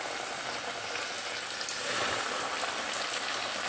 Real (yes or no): yes